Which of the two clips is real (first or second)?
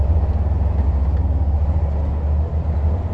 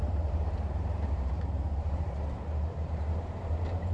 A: first